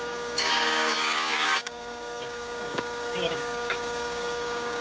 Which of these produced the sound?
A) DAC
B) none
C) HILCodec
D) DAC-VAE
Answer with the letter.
A